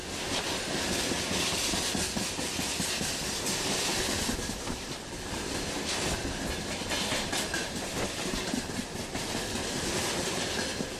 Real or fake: real